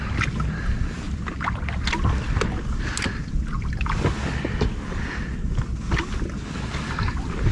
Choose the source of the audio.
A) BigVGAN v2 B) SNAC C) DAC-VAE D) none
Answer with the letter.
D